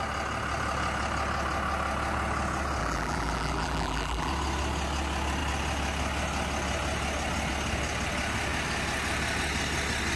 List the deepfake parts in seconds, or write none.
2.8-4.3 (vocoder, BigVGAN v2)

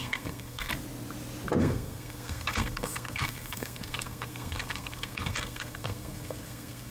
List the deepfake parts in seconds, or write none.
0.0-0.7 (codec, SNAC); 1.6-6.9

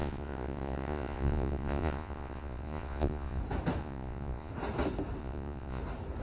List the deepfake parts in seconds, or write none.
0.0-3.4 (vocoder, Vocos); 3.8-4.5; 5.2-5.8

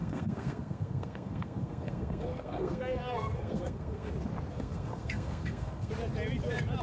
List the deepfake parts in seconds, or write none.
0.0-4.1 (codec, SNAC); 4.5-5.9

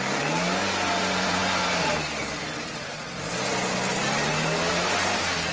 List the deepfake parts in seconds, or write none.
0.0-1.4 (vocoder, BigVGAN v2); 4.7-5.5